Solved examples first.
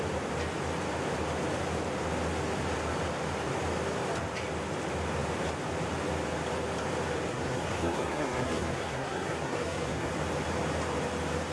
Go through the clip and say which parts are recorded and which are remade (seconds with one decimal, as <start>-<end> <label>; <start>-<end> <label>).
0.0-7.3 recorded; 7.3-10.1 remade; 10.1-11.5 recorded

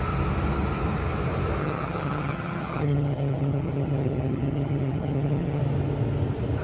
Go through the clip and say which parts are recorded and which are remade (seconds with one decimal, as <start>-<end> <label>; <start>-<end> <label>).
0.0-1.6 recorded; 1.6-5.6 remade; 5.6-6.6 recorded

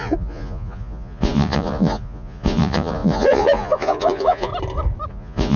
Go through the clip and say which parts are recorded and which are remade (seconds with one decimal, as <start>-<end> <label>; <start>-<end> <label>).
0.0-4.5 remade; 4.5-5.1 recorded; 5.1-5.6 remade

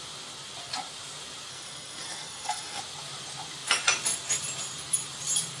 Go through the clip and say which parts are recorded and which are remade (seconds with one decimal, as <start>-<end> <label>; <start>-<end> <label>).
0.0-1.5 recorded; 1.5-2.8 remade; 2.8-5.6 recorded

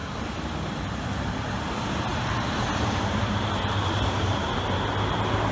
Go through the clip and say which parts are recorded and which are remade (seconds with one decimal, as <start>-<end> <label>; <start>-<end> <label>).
0.0-2.1 recorded; 2.1-4.2 remade; 4.2-5.5 recorded